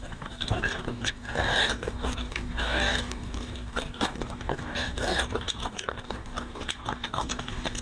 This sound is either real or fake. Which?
fake